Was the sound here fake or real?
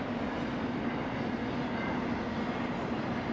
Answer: real